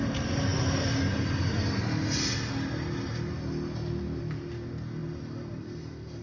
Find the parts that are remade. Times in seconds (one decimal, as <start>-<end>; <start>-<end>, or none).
5.0-6.2